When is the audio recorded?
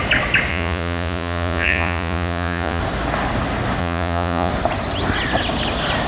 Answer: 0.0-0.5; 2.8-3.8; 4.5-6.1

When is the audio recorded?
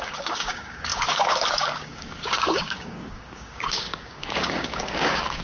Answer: none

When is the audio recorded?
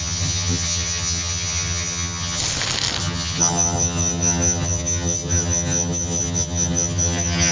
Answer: 2.4-3.0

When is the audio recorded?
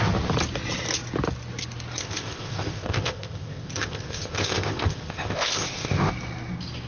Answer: 0.0-2.0; 6.1-6.9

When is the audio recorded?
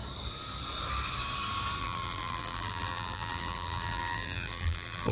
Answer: 0.0-1.8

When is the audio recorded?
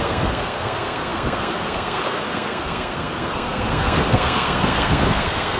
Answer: none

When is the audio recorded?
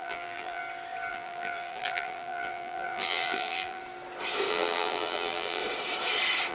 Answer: 0.6-1.1; 3.8-4.5; 5.6-6.5